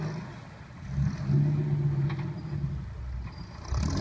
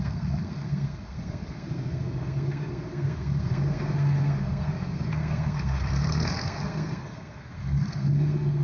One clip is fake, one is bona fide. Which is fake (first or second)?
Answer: second